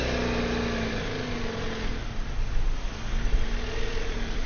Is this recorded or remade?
recorded